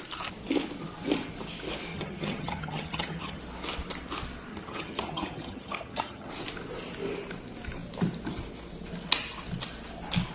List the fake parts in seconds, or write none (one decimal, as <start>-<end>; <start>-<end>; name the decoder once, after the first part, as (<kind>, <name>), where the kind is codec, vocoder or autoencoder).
1.9-3.4 (vocoder, HiFi-GAN); 4.5-6.3

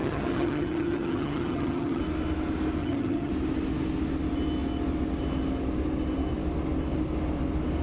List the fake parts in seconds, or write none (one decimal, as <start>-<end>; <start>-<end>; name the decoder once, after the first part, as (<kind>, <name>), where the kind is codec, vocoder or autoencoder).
0.0-2.0 (vocoder, HiFi-GAN); 2.8-3.3

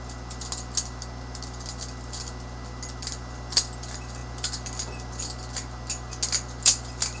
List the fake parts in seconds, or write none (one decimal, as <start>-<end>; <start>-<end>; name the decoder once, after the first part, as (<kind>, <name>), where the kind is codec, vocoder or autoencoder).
none

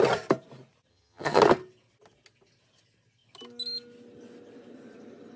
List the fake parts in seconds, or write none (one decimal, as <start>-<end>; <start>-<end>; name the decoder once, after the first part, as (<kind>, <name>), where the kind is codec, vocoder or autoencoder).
0.9-1.4 (vocoder, HiFi-GAN)

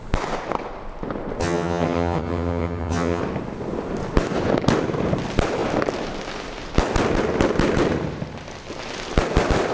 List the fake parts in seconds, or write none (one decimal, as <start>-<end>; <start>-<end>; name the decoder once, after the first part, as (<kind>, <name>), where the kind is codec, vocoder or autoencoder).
1.4-3.2 (vocoder, HiFi-GAN)

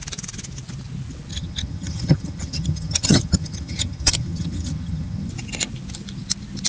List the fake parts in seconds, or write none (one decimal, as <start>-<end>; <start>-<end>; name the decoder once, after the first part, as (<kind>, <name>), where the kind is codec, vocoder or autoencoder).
1.3-5.3 (vocoder, HiFi-GAN)